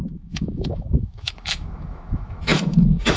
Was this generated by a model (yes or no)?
yes